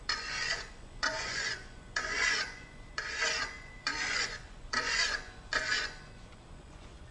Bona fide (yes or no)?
no